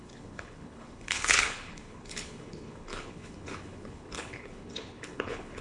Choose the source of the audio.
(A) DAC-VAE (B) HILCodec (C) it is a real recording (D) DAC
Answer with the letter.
B